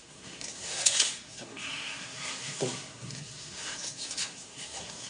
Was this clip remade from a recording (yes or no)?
yes